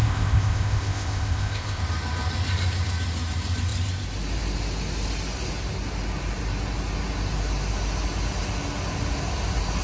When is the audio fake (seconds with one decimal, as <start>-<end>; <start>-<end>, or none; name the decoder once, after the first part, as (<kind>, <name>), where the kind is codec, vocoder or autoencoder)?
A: 0.0-1.8 (codec, ZipCodec)